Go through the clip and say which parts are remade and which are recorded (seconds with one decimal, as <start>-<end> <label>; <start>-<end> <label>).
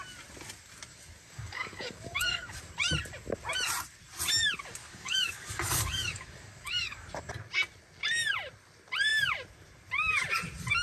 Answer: 0.0-0.9 recorded; 0.9-2.6 remade; 2.6-4.8 recorded; 4.8-7.1 remade; 7.1-10.8 recorded